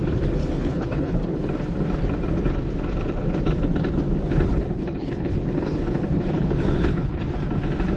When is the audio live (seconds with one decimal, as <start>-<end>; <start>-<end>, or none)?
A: 0.0-0.4; 1.2-4.5; 7.2-8.0